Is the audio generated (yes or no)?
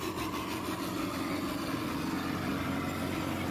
no